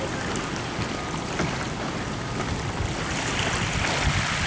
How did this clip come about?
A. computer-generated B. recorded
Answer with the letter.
B